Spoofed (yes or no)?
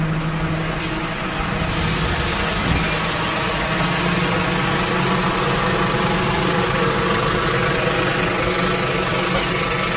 no